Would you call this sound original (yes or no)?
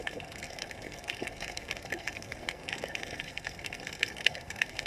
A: no